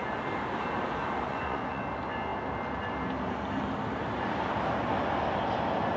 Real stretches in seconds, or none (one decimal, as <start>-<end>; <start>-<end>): 0.0-1.3; 1.8-6.0